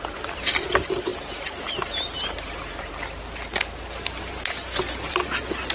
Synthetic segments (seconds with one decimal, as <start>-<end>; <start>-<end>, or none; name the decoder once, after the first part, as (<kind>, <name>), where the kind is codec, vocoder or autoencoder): none